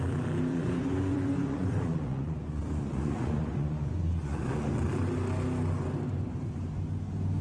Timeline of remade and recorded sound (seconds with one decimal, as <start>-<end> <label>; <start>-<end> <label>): 0.0-0.5 recorded; 0.5-4.7 remade; 4.7-7.4 recorded